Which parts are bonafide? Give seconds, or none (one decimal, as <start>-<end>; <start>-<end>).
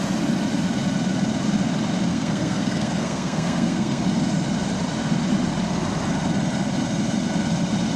0.0-2.1; 4.0-8.0